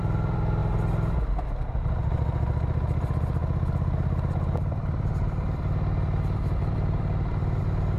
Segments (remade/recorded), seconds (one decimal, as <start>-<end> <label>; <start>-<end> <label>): 0.0-0.6 remade; 0.6-1.3 recorded; 1.3-8.0 remade